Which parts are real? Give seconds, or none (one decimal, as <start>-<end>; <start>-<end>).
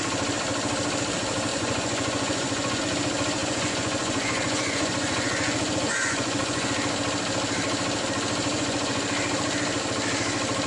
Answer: 0.0-1.5; 2.8-3.4; 6.7-8.5; 9.0-10.7